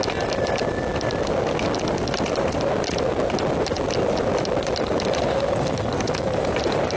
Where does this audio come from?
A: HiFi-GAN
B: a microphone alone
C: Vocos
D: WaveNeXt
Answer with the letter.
B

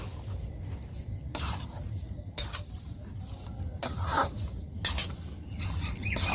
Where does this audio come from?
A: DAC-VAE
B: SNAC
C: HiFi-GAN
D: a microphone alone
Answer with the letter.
D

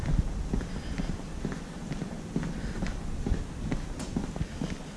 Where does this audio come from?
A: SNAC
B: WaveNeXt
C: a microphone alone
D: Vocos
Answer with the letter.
C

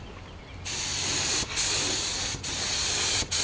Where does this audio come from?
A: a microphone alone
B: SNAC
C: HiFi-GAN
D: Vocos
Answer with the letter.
A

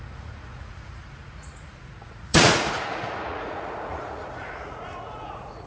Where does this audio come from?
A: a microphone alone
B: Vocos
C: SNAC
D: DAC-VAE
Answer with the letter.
B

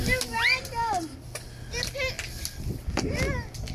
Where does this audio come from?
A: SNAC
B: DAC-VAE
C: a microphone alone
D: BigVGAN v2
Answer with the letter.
C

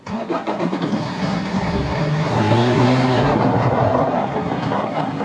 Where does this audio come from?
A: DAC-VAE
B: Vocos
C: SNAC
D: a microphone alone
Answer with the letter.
C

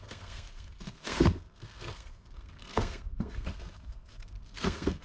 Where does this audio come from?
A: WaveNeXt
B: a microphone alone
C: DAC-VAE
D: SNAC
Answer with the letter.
D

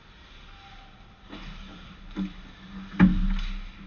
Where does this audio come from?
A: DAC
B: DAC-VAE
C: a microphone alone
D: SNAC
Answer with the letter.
C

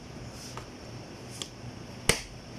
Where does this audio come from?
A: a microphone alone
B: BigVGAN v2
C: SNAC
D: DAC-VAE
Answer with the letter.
A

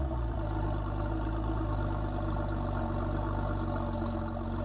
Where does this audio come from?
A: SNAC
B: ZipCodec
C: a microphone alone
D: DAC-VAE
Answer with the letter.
C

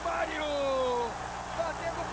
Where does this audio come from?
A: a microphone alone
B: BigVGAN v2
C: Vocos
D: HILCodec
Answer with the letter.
A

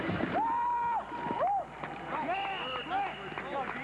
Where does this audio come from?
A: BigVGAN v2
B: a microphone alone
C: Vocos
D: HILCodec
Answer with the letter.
B